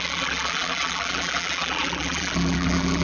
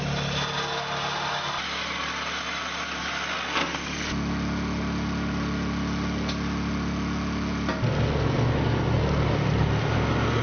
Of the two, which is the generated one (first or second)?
first